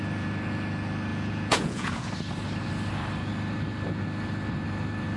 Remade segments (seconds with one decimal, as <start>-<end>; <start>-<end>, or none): 1.1-2.1